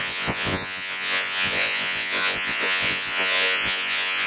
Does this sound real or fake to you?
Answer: fake